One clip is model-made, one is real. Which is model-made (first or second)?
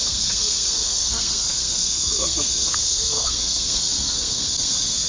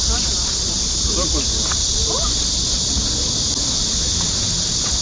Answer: first